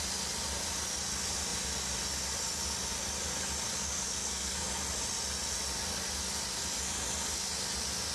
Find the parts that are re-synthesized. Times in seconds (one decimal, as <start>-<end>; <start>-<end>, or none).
3.7-4.7